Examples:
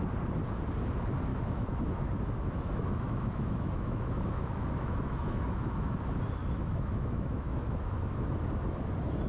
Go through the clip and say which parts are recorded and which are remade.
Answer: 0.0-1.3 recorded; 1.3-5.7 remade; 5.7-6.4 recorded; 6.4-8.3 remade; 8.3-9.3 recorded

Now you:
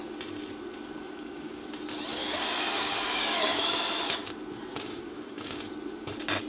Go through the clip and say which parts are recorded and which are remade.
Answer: 0.0-1.0 recorded; 1.0-1.7 remade; 1.7-2.1 recorded; 2.1-3.6 remade; 3.6-4.7 recorded; 4.7-5.6 remade; 5.6-6.5 recorded

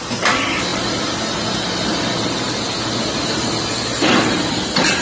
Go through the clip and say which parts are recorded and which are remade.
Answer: 0.0-5.0 recorded

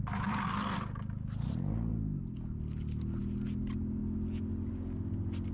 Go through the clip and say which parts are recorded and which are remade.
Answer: 0.0-5.5 recorded

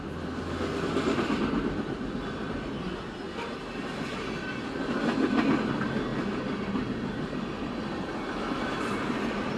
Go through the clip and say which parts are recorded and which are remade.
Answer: 0.0-9.6 recorded